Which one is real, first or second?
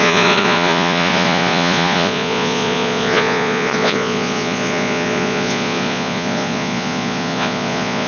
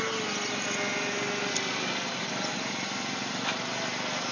second